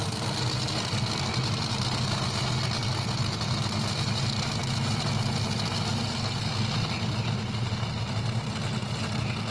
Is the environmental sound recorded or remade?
recorded